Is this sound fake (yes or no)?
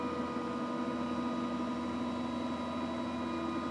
no